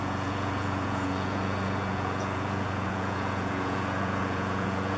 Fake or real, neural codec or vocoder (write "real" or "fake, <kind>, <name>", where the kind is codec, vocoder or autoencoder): fake, vocoder, Vocos